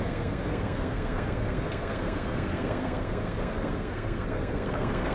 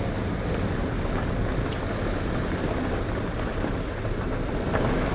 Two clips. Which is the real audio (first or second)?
second